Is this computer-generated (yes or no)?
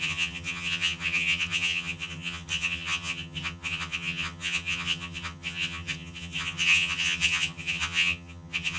yes